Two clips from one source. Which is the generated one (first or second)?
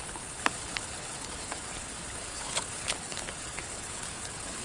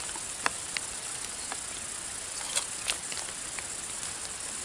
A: first